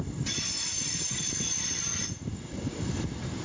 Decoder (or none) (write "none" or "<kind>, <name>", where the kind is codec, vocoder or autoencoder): none